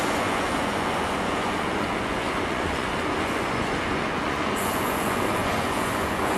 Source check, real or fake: fake